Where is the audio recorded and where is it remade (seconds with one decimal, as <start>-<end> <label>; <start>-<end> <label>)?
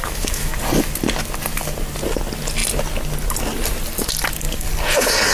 0.0-0.5 remade; 0.5-5.3 recorded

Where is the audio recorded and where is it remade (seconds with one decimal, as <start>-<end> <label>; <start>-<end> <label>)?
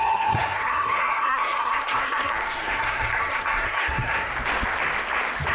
0.0-4.3 remade; 4.3-5.5 recorded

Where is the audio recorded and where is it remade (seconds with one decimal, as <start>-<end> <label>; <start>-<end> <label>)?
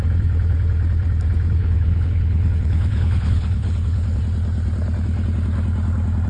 0.0-1.6 recorded; 1.6-4.2 remade; 4.2-6.3 recorded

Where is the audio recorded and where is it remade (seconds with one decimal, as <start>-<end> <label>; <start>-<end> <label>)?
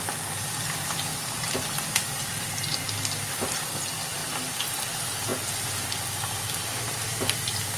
0.0-7.8 recorded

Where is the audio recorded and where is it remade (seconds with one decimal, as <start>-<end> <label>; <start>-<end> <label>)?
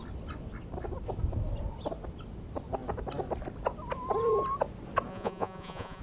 0.0-5.1 recorded; 5.1-6.0 remade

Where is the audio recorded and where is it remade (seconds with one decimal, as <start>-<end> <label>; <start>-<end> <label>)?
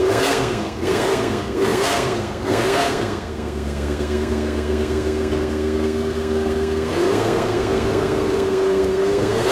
0.0-9.5 remade